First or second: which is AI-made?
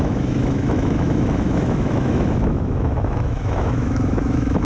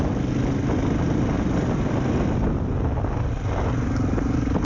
first